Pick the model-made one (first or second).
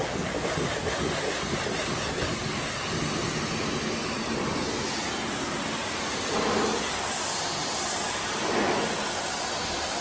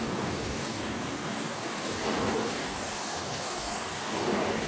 second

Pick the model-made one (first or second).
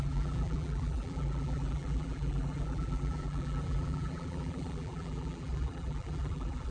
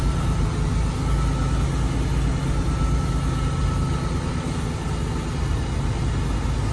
first